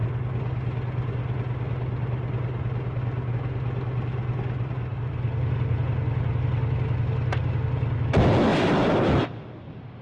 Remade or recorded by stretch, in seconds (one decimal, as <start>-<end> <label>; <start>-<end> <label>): 0.0-10.0 recorded

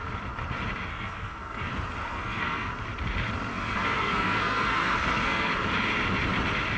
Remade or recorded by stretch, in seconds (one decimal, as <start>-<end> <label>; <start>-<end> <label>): 0.0-0.9 recorded; 0.9-1.7 remade; 1.7-2.1 recorded; 2.1-2.7 remade; 2.7-3.5 recorded; 3.5-5.5 remade; 5.5-6.8 recorded

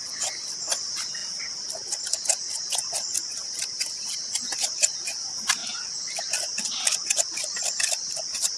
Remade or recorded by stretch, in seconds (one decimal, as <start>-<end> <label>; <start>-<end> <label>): 0.0-8.6 recorded

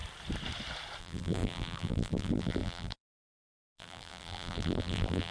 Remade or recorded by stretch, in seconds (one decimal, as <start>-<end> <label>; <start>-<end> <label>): 0.0-1.0 recorded; 1.0-5.3 remade

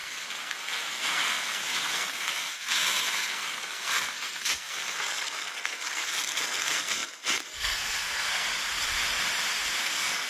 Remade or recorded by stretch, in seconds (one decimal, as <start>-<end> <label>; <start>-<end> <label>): 0.0-8.5 remade; 8.5-9.8 recorded; 9.8-10.3 remade

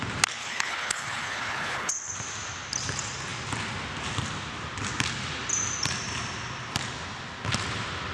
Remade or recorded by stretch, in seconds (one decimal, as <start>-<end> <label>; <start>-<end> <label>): 0.0-0.4 recorded; 0.4-1.9 remade; 1.9-8.1 recorded

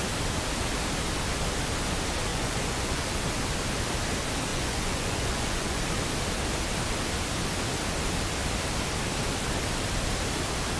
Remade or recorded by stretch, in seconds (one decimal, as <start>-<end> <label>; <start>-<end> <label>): 0.0-2.3 recorded; 2.3-3.0 remade; 3.0-4.5 recorded; 4.5-5.8 remade; 5.8-10.8 recorded